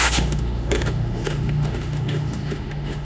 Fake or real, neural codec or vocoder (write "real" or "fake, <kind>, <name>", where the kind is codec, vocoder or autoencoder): fake, autoencoder, DAC-VAE